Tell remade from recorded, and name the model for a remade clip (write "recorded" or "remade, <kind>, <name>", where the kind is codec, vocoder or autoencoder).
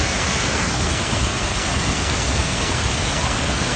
remade, codec, SNAC